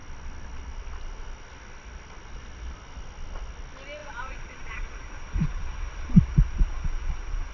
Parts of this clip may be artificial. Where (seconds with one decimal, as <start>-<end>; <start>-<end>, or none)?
4.0-7.5